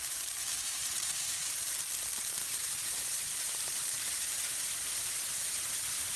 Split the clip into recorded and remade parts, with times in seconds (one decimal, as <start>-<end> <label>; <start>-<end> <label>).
0.0-1.7 remade; 1.7-2.4 recorded; 2.4-6.2 remade